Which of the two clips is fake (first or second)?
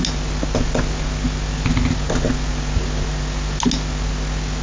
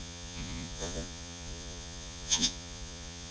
second